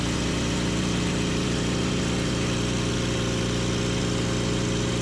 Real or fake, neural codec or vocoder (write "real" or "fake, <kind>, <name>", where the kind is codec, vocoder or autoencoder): real